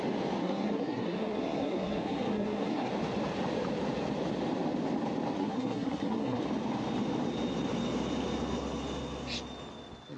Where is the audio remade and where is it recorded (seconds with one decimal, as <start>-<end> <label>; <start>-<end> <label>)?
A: 0.0-0.4 recorded; 0.4-2.9 remade; 2.9-5.4 recorded; 5.4-6.4 remade; 6.4-10.2 recorded